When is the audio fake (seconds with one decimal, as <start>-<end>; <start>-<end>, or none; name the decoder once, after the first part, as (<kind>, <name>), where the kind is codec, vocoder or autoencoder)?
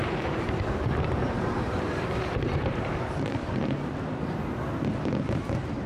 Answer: 0.0-3.5 (vocoder, BigVGAN v2)